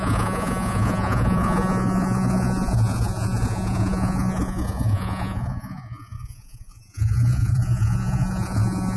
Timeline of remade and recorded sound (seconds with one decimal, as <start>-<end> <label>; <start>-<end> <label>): 0.0-9.0 remade

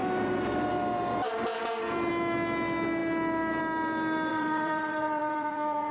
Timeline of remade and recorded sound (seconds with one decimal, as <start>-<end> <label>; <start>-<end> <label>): 0.0-4.3 recorded; 4.3-5.9 remade